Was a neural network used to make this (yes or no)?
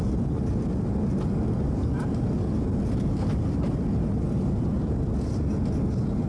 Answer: no